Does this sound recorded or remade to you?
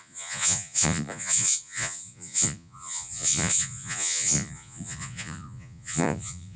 remade